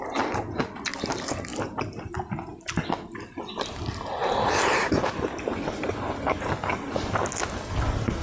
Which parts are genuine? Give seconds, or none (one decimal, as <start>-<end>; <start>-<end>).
0.0-1.5; 2.1-4.2; 5.4-8.2